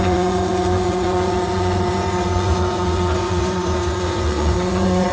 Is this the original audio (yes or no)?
no